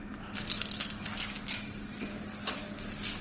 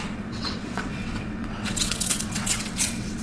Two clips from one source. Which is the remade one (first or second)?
second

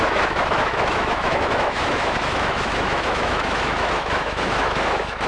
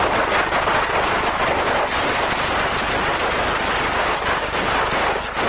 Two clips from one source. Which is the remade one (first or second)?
first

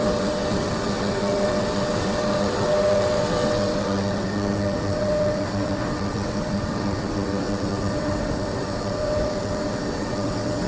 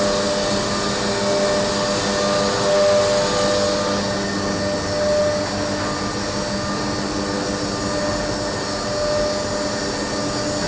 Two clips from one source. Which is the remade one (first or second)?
first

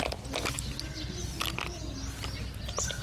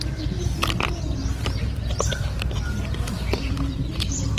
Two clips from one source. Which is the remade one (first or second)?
second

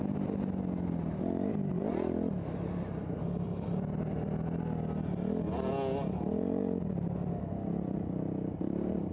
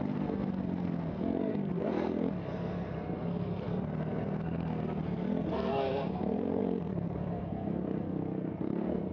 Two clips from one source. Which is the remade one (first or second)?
second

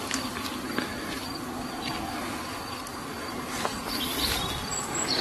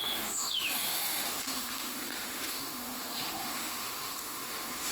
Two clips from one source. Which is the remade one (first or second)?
second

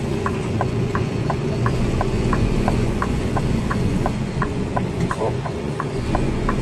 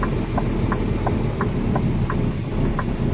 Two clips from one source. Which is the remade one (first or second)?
first